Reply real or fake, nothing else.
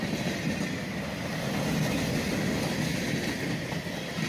real